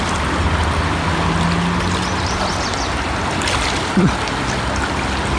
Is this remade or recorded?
recorded